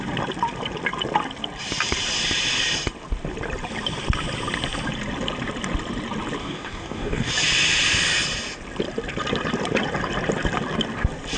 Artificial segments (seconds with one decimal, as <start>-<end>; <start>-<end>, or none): 6.4-7.3